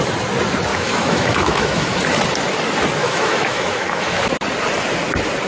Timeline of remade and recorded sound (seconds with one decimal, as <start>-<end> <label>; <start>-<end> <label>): 0.0-0.7 recorded; 0.7-2.0 remade; 2.0-3.0 recorded; 3.0-4.2 remade; 4.2-5.5 recorded